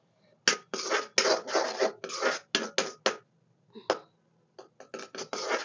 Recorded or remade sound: recorded